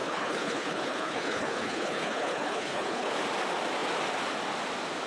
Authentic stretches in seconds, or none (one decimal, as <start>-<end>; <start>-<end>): 3.1-5.1